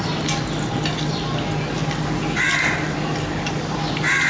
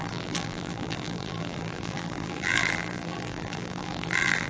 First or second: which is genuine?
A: first